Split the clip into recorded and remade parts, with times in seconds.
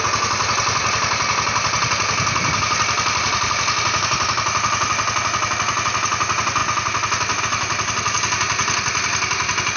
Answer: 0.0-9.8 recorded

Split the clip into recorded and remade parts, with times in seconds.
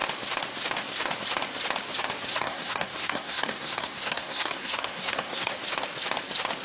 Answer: 0.0-2.3 recorded; 2.3-5.5 remade; 5.5-6.6 recorded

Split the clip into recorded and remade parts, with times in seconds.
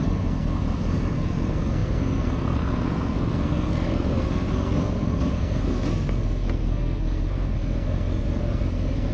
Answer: 0.0-9.1 remade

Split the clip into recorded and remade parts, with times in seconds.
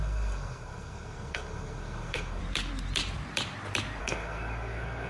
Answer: 0.0-2.4 remade; 2.4-4.0 recorded; 4.0-5.1 remade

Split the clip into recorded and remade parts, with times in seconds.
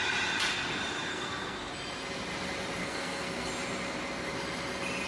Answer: 0.0-1.1 recorded; 1.1-1.7 remade; 1.7-2.8 recorded; 2.8-3.5 remade; 3.5-5.1 recorded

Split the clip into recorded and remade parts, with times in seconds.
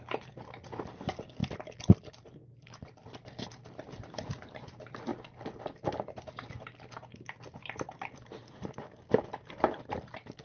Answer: 0.0-10.4 recorded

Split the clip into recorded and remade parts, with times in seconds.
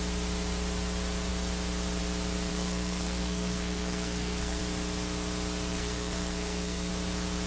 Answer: 0.0-2.5 recorded; 2.5-4.6 remade; 4.6-5.7 recorded; 5.7-6.9 remade; 6.9-7.5 recorded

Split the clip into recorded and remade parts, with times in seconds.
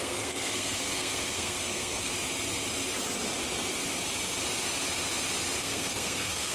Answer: 0.0-2.1 remade; 2.1-5.6 recorded; 5.6-6.5 remade